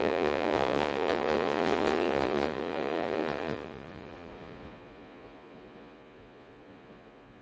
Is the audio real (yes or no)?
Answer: no